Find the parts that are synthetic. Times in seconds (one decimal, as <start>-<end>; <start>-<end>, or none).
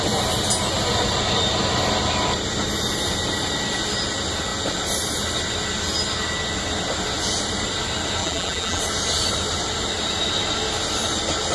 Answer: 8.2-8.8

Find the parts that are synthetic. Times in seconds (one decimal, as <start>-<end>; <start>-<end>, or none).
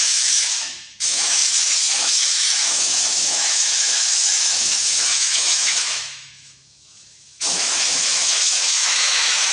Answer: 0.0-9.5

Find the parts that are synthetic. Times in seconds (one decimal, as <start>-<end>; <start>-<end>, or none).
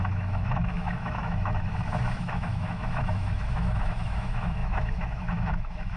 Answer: 0.0-6.0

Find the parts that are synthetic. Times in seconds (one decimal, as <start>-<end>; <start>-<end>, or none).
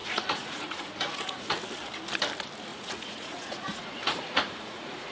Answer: 0.0-1.5; 2.7-5.1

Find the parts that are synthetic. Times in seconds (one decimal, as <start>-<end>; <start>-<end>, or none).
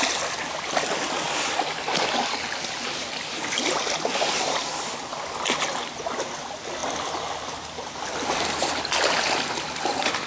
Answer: none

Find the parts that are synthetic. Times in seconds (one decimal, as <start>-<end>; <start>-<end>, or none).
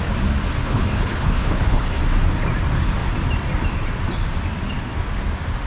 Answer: 0.6-2.0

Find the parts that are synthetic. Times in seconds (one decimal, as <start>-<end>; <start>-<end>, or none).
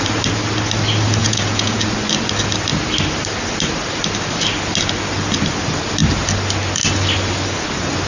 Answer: 1.2-1.8